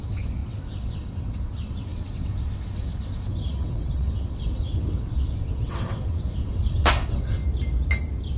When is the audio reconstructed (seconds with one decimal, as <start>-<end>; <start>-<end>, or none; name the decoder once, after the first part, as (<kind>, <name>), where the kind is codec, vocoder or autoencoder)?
0.0-7.4 (vocoder, WaveNeXt)